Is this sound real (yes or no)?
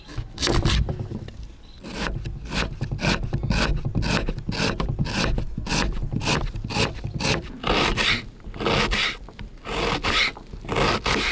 yes